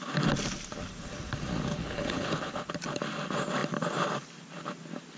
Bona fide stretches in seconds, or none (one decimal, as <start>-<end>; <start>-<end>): 0.0-1.7; 2.7-5.2